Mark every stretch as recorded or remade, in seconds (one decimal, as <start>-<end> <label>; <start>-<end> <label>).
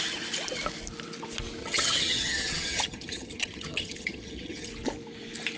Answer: 0.0-1.6 recorded; 1.6-4.7 remade; 4.7-5.6 recorded